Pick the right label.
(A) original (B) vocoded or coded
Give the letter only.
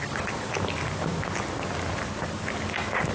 A